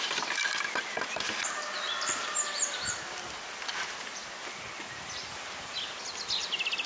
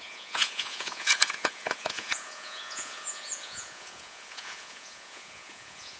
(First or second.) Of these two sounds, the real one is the first